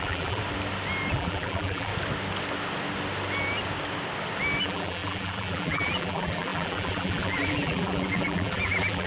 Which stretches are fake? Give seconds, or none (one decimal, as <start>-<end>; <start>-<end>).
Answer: 0.0-0.4; 1.1-1.9; 4.6-9.1